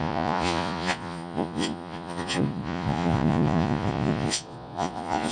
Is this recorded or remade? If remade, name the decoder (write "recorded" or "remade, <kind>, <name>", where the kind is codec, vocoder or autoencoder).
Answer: remade, vocoder, Vocos